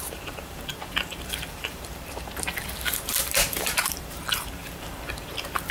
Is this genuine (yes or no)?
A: no